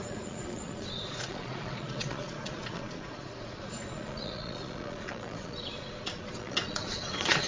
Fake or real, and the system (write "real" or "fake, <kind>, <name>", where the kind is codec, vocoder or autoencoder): fake, vocoder, Vocos